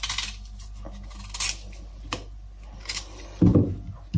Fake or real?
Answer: real